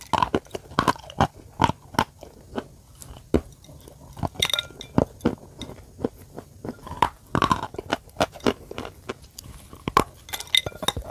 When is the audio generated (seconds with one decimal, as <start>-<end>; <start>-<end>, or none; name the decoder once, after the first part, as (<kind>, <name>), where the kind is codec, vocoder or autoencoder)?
3.0-3.7 (vocoder, BigVGAN v2); 6.8-9.1